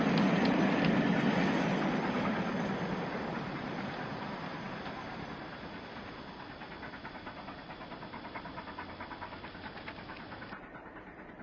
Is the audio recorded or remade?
recorded